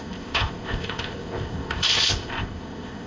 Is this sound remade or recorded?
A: remade